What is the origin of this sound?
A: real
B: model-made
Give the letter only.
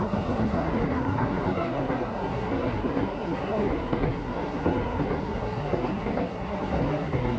B